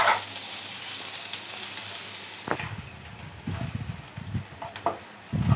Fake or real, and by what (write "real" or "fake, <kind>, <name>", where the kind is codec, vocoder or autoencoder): real